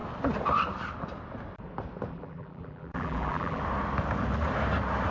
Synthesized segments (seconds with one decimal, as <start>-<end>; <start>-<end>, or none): 2.1-3.6